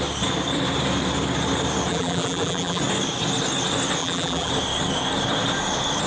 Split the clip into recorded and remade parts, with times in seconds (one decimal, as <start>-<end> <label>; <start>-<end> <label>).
0.0-1.9 recorded; 1.9-2.8 remade; 2.8-4.0 recorded; 4.0-4.5 remade; 4.5-6.1 recorded